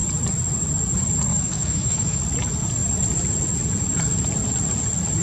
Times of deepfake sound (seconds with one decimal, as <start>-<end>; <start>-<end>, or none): 1.3-2.2

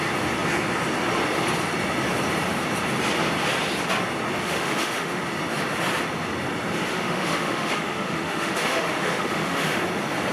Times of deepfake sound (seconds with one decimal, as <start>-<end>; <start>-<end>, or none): 4.4-5.2; 6.9-9.8